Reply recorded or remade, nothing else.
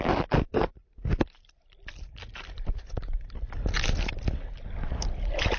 recorded